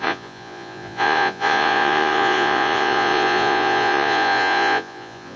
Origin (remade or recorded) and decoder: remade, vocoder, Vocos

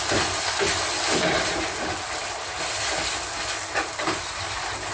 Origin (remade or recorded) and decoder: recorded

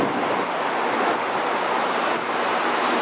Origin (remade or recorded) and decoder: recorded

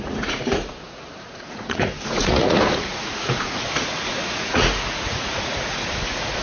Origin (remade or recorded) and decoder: remade, vocoder, Vocos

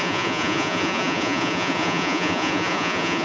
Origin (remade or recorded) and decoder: remade, vocoder, Vocos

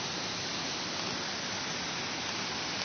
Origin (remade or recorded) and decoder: recorded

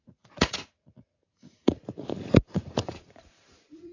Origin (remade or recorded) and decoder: remade, vocoder, Vocos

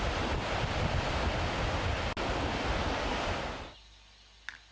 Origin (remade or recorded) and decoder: recorded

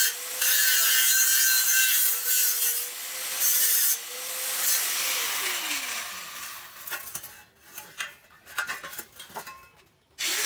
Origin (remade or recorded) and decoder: recorded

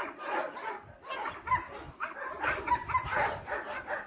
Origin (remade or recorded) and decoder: recorded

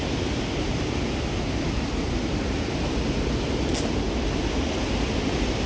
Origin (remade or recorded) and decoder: recorded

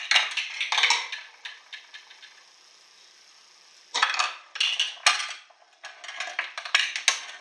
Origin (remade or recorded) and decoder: recorded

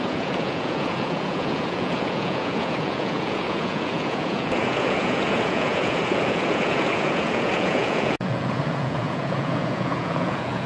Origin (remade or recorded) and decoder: remade, vocoder, Vocos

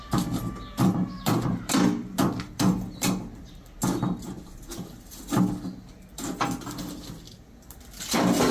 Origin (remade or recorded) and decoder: recorded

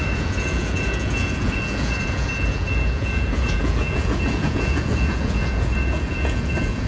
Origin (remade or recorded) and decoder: remade, vocoder, Vocos